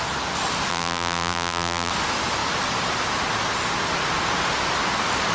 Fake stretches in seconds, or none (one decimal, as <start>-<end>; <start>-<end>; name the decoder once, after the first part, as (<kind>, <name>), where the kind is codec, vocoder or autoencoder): 0.7-1.9 (vocoder, BigVGAN v2)

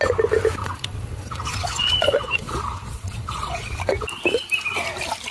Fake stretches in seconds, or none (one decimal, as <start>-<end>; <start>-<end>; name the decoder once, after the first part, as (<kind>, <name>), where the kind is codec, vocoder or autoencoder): 0.6-3.8 (vocoder, Vocos)

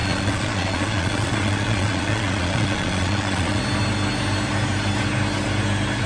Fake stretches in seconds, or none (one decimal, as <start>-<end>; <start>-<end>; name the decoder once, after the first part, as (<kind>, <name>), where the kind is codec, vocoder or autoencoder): 0.0-3.6 (vocoder, Vocos)